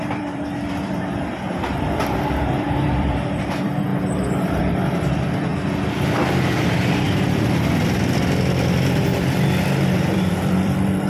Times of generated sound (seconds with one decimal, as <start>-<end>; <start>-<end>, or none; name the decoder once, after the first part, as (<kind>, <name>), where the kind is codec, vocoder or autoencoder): 0.0-3.9 (vocoder, BigVGAN v2); 4.6-5.5; 6.6-11.1